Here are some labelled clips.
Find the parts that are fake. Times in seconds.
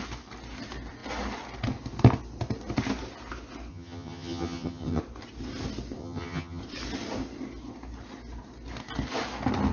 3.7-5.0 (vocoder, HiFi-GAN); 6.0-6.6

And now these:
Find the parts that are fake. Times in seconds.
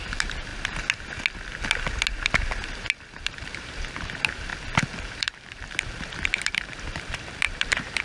0.0-0.5 (vocoder, BigVGAN v2); 3.4-4.5; 5.0-8.0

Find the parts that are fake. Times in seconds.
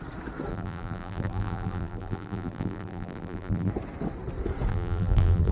0.5-3.7 (vocoder, BigVGAN v2); 4.7-5.5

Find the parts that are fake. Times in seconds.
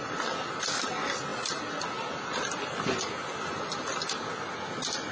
none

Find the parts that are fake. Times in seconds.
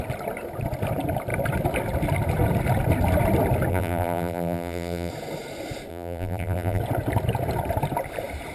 3.7-5.1 (vocoder, BigVGAN v2); 5.9-6.8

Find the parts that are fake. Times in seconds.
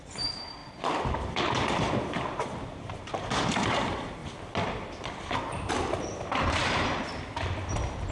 0.0-0.6 (vocoder, BigVGAN v2); 1.6-4.2; 5.7-6.6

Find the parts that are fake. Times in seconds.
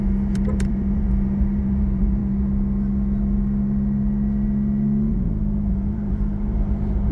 0.0-2.2 (vocoder, BigVGAN v2); 5.7-7.1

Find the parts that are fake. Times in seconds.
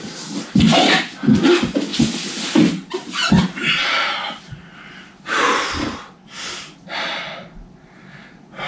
none